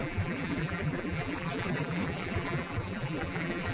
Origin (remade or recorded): remade